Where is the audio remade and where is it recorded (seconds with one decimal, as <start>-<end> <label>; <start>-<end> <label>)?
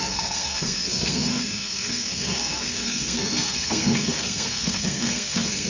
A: 0.0-5.7 remade